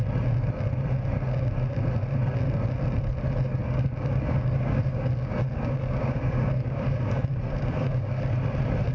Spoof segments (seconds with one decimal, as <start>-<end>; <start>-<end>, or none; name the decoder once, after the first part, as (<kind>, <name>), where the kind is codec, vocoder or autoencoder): 3.6-8.2 (codec, DAC)